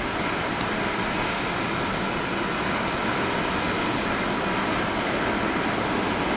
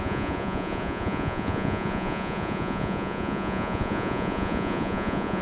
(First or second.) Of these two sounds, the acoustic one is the first